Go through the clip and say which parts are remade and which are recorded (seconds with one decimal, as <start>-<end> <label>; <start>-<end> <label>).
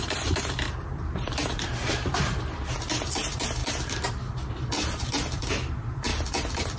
0.0-3.6 remade; 3.6-4.7 recorded; 4.7-6.1 remade; 6.1-6.8 recorded